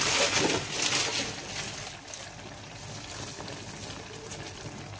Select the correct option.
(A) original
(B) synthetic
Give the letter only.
A